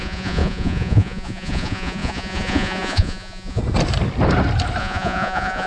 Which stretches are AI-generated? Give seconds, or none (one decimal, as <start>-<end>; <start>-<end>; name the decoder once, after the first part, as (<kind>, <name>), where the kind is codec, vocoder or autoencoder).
0.0-3.6 (vocoder, Vocos); 4.8-5.7